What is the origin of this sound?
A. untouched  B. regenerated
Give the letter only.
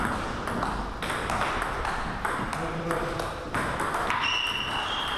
A